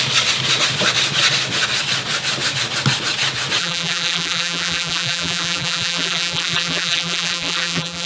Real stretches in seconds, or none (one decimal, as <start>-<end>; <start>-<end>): 0.0-3.6